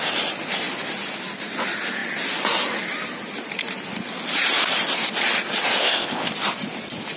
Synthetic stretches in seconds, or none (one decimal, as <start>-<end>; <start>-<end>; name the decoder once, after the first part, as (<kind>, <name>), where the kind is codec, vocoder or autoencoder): 5.8-6.3 (codec, ZipCodec)